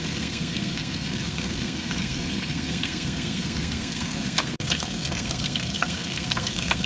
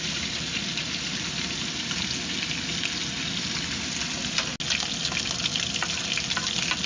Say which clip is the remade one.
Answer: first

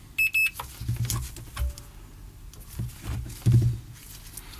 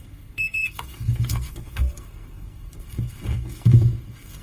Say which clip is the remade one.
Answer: second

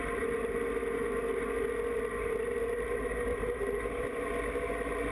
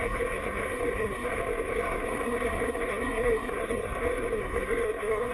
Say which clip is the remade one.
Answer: second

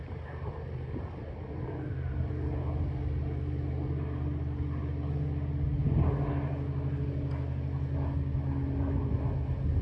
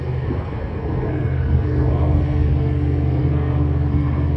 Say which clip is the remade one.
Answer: second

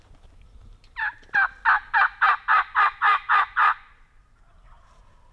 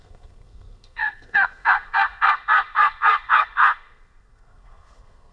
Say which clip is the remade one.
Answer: second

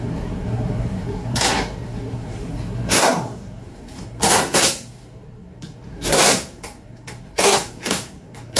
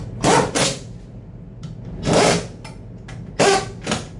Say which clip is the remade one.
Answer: first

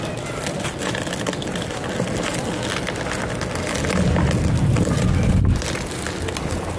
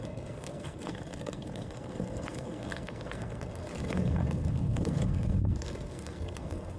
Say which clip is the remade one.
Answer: second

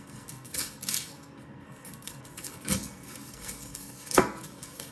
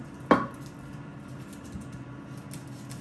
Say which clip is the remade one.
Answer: first